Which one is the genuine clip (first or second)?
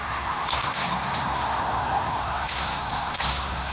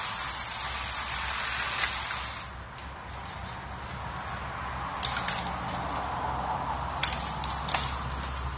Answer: second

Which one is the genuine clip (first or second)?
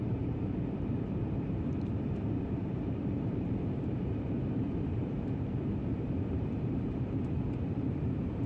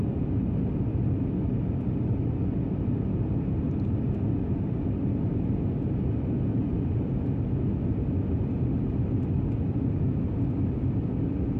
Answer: second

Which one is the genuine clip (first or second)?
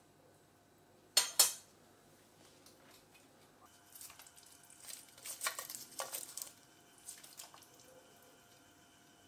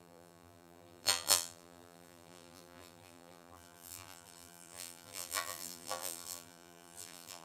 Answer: first